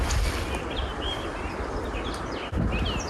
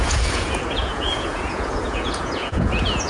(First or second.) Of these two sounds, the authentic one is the first